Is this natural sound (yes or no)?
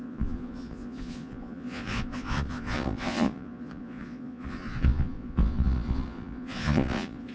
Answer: no